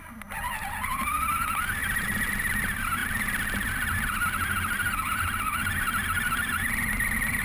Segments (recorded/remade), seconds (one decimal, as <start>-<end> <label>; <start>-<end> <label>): 0.0-7.4 recorded